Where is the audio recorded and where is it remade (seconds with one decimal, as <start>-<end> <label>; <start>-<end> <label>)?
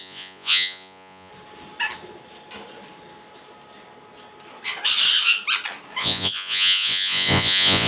0.0-1.3 remade; 1.3-6.0 recorded; 6.0-7.9 remade